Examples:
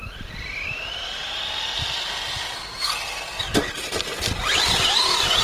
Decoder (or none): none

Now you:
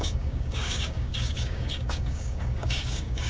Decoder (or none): codec, DAC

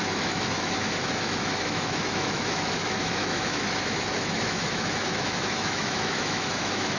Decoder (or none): autoencoder, DAC-VAE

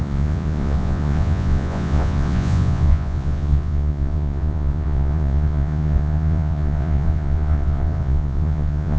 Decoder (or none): vocoder, Vocos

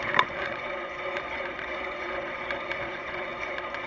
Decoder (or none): vocoder, Vocos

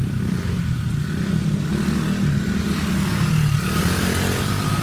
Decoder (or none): none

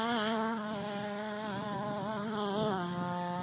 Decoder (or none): vocoder, BigVGAN v2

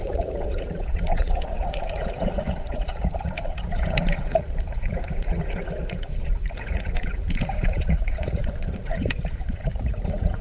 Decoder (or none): vocoder, Vocos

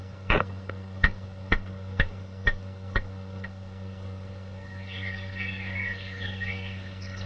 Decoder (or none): codec, SNAC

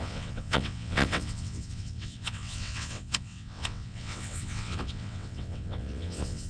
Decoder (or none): vocoder, WaveNeXt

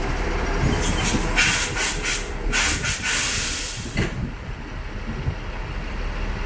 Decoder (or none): none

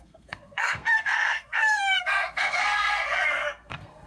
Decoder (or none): codec, SNAC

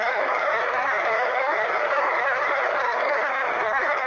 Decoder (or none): codec, SNAC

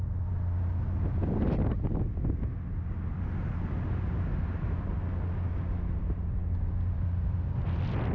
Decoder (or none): none